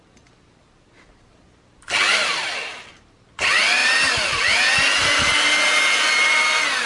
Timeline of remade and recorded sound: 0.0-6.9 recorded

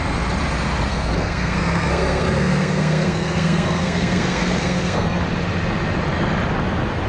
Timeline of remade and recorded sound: 0.0-0.9 recorded; 0.9-5.2 remade; 5.2-7.1 recorded